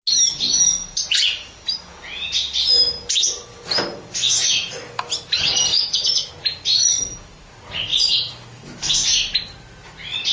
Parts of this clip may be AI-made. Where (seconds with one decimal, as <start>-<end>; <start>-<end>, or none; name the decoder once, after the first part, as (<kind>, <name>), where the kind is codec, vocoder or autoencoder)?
4.2-5.0 (autoencoder, DAC-VAE); 5.7-6.3; 7.9-8.9